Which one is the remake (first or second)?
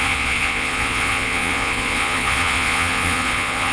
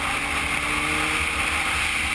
first